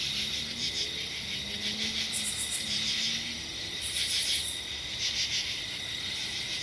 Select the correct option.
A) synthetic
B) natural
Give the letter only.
B